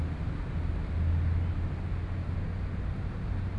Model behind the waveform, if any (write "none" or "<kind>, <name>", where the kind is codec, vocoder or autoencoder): none